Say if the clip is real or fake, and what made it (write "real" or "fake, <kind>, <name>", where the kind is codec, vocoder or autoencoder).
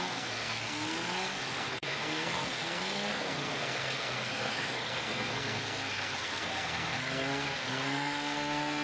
fake, codec, SNAC